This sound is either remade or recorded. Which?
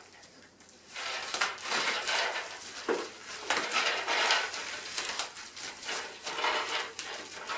remade